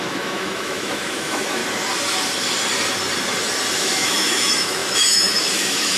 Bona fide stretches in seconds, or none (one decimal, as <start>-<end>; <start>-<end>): 1.6-3.8